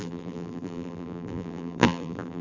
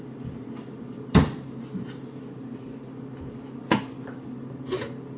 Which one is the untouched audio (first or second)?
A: second